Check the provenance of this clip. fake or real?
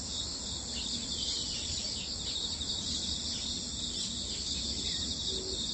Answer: real